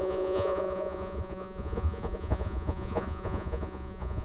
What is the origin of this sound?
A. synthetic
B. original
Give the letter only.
A